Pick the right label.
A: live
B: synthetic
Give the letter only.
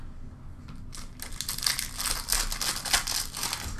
A